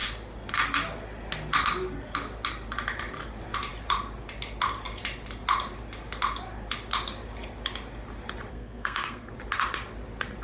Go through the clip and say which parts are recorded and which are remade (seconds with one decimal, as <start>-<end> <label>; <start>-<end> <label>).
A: 0.0-8.5 recorded; 8.5-9.3 remade; 9.3-10.4 recorded